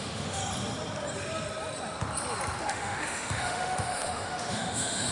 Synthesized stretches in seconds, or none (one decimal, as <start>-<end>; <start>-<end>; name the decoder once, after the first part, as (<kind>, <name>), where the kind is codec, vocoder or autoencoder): 0.0-0.4 (autoencoder, DAC-VAE); 2.6-5.1